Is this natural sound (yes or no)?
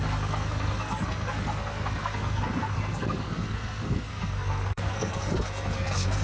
no